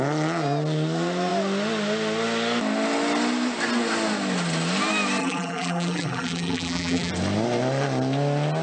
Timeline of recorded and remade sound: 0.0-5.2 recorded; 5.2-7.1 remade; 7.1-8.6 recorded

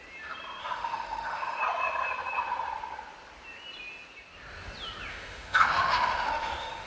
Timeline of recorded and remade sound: 0.0-0.6 recorded; 0.6-1.6 remade; 1.6-5.1 recorded; 5.1-6.9 remade